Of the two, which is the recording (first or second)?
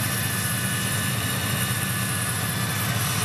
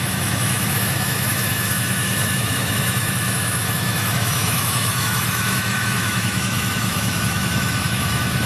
first